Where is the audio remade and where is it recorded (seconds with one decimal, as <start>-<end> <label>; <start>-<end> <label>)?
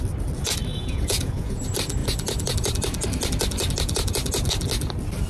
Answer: 0.0-0.7 recorded; 0.7-1.6 remade; 1.6-5.3 recorded